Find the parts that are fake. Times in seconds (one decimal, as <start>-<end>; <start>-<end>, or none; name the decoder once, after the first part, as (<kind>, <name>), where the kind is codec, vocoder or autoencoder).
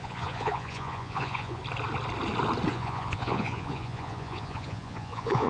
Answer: 0.0-1.6 (vocoder, Vocos); 2.7-5.5